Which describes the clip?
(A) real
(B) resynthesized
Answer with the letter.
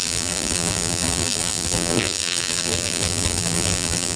B